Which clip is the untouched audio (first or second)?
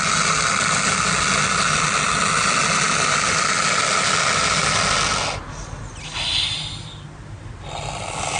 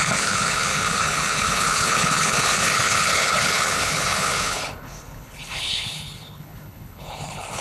first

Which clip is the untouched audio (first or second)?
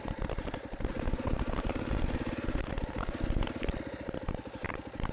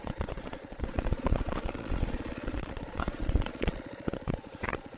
first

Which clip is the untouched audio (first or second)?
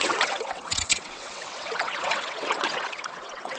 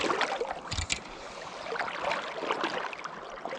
second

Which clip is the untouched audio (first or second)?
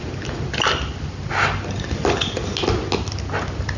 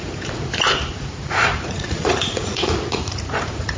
first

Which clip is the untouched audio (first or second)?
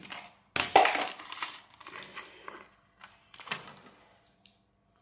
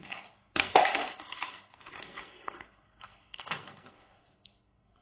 first